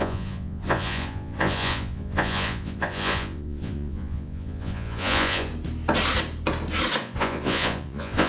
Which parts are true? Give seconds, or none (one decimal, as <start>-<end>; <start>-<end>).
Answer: 5.5-7.0